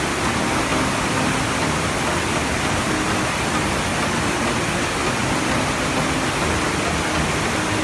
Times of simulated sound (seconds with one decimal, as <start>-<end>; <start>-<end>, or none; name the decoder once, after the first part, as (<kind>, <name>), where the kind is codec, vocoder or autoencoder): none